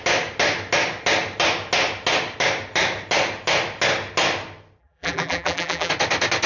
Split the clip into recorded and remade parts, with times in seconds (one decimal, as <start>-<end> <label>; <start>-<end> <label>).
0.0-4.8 recorded; 4.8-5.9 remade; 5.9-6.5 recorded